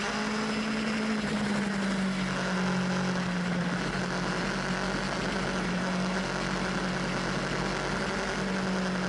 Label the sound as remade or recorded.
recorded